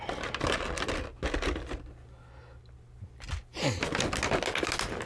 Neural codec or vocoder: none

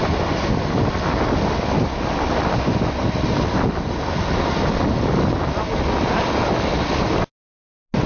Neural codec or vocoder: none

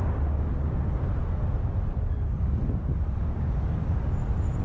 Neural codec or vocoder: none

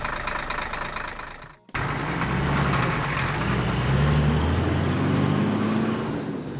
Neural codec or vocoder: none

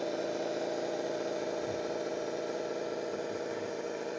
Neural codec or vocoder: none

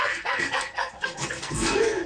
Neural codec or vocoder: codec, SNAC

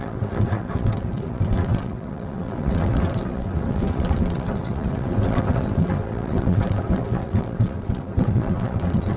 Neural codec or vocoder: vocoder, WaveNeXt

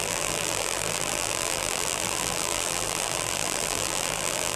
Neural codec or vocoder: vocoder, BigVGAN v2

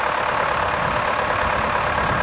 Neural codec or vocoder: none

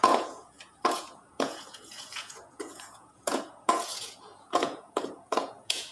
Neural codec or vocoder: vocoder, Vocos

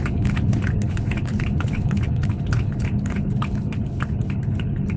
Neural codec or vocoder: codec, HILCodec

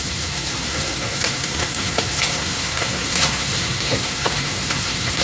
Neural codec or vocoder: codec, SNAC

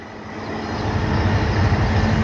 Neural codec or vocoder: none